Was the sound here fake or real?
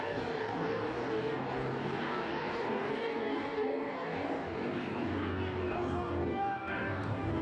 fake